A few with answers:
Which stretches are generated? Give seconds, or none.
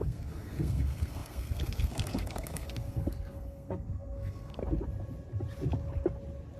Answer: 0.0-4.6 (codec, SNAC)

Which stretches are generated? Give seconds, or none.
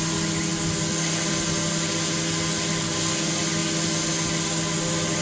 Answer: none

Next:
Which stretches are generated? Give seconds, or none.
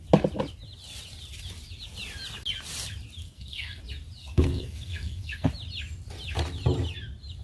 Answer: 3.2-3.8 (codec, SNAC); 4.2-5.5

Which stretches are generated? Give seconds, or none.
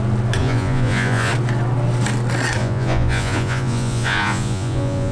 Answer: 0.4-1.3 (vocoder, Vocos); 2.6-5.1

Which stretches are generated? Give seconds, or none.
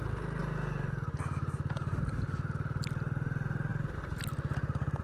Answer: none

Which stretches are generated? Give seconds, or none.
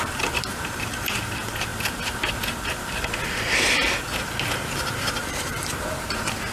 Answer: 0.0-1.7 (vocoder, BigVGAN v2); 2.3-4.1; 4.7-6.5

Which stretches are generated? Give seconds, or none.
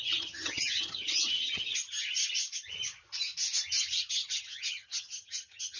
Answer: 0.0-2.2 (vocoder, HiFi-GAN); 4.1-5.8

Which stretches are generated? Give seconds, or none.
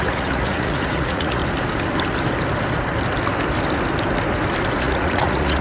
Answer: 0.0-1.4 (vocoder, Vocos); 4.8-5.6